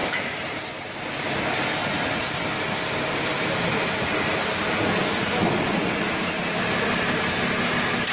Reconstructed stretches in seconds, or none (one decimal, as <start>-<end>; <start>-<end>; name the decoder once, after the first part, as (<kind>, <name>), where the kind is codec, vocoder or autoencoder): none